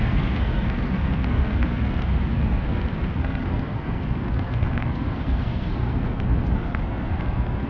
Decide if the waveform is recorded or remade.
remade